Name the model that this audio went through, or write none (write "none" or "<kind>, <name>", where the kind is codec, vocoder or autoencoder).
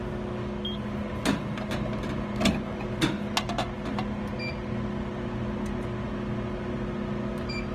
none